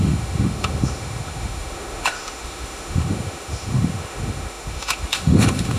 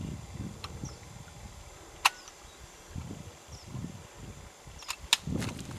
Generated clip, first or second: first